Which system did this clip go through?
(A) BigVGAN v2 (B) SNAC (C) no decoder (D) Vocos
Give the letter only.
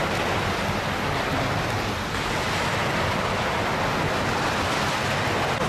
C